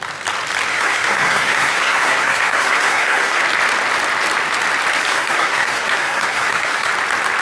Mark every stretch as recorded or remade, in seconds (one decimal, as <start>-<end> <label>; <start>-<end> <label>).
0.0-0.7 recorded; 0.7-3.4 remade; 3.4-5.1 recorded; 5.1-6.9 remade; 6.9-7.4 recorded